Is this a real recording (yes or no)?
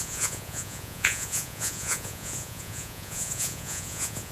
no